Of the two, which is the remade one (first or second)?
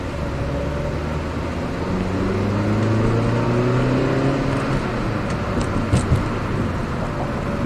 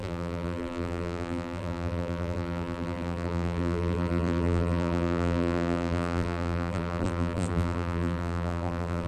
second